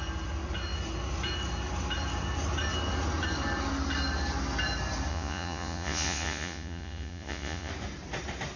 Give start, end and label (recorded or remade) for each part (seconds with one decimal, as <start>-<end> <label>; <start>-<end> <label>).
0.0-5.1 recorded; 5.1-7.7 remade; 7.7-8.6 recorded